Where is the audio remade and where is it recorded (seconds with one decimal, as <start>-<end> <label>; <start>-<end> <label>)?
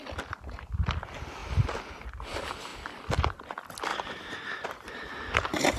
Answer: 0.0-3.9 recorded; 3.9-5.8 remade